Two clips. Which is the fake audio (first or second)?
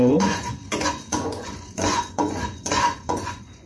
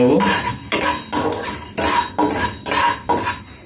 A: first